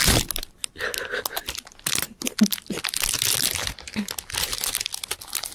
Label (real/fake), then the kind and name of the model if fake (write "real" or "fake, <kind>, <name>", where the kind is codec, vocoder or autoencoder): real